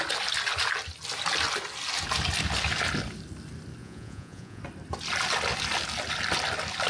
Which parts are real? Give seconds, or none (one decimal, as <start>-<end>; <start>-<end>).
0.0-3.8; 4.6-6.9